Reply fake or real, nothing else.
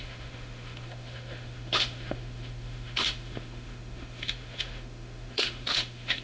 fake